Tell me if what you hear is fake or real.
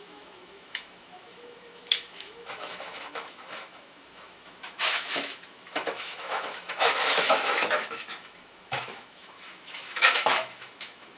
fake